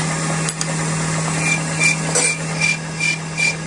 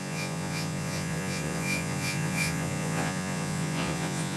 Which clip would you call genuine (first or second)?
first